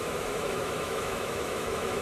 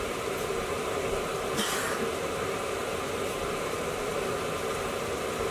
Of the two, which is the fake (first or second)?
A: first